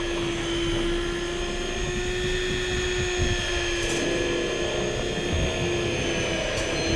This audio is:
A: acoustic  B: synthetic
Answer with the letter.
A